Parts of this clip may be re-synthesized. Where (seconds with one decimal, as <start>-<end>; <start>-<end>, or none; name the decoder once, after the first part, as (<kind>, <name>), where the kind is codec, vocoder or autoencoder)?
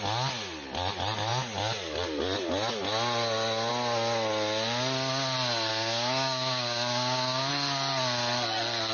5.7-7.5 (codec, DAC)